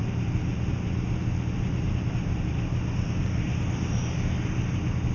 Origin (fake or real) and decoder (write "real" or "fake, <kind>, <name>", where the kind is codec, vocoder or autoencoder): real